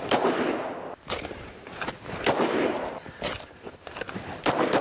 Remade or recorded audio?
remade